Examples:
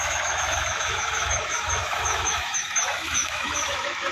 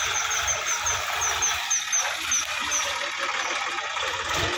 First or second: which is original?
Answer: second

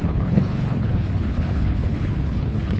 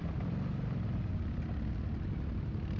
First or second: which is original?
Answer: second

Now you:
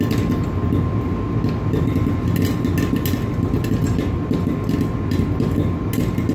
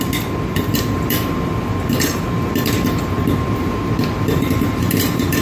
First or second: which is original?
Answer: first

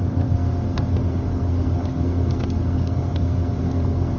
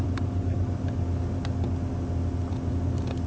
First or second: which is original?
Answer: second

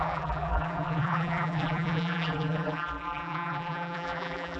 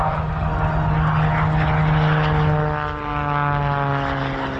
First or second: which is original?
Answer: second